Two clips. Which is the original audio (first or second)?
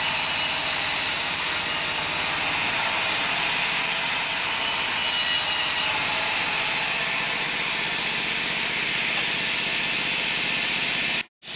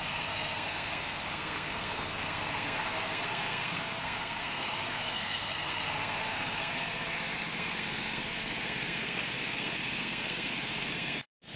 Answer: first